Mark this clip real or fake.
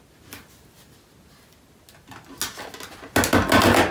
real